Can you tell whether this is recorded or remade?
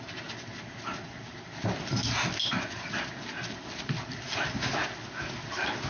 recorded